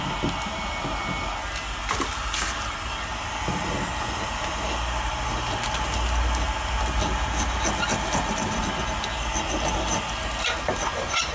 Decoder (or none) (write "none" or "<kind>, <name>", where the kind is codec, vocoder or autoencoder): none